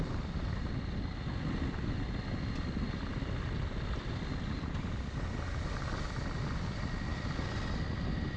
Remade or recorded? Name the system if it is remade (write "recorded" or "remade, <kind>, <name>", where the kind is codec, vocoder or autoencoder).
recorded